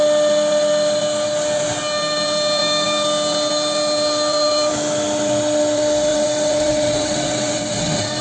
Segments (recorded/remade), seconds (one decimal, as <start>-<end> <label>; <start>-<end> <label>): 0.0-6.1 recorded; 6.1-8.2 remade